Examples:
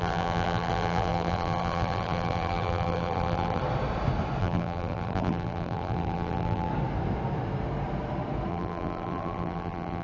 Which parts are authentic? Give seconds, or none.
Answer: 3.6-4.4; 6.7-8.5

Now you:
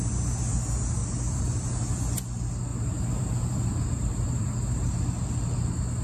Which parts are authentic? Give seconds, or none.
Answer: 0.0-1.0; 1.7-2.7; 4.9-6.0

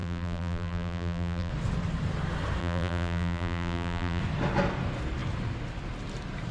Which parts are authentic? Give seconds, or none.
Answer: 1.5-2.6; 4.2-6.5

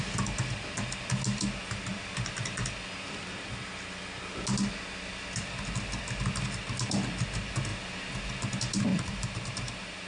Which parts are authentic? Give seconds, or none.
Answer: 0.0-8.9

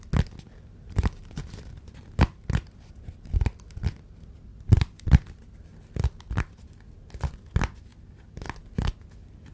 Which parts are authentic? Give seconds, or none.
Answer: 0.0-0.5; 2.2-4.5; 6.5-9.5